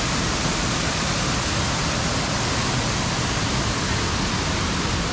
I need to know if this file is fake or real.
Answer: real